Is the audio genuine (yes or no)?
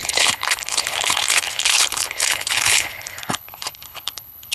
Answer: no